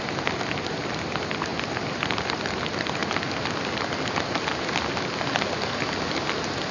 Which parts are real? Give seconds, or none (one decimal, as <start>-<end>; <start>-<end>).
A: 3.0-6.3